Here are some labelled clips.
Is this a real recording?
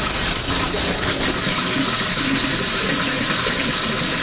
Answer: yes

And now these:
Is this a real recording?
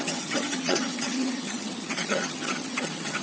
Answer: no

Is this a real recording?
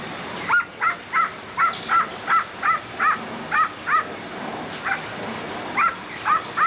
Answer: yes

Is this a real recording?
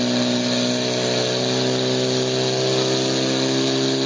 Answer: yes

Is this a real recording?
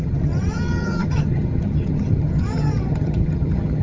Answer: no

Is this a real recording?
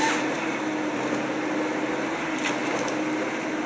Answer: yes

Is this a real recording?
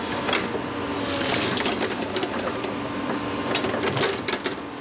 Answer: yes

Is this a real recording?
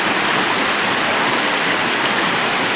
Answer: yes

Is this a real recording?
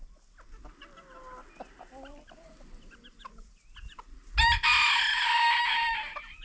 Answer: yes